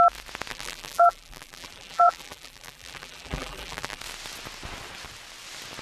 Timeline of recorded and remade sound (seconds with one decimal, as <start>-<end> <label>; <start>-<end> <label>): 0.0-0.5 recorded; 0.5-4.0 remade; 4.0-5.8 recorded